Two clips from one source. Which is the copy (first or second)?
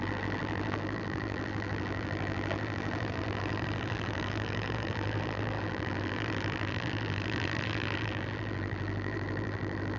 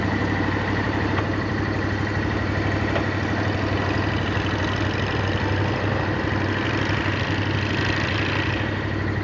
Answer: first